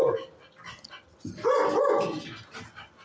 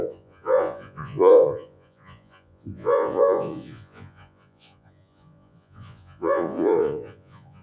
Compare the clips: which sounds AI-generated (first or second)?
second